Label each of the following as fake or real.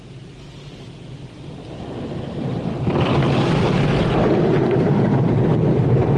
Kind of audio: real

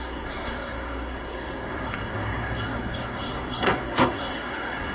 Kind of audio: fake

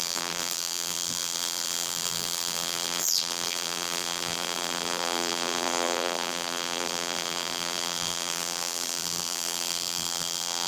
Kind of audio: fake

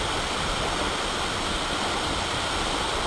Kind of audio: real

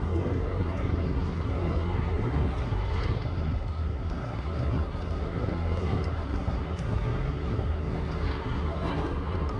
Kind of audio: fake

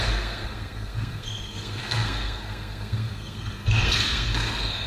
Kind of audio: fake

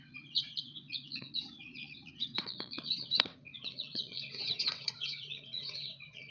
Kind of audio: fake